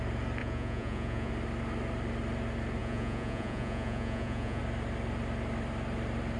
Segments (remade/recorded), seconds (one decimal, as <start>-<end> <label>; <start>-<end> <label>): 0.0-0.4 recorded; 0.4-1.3 remade; 1.3-2.8 recorded; 2.8-4.6 remade; 4.6-6.4 recorded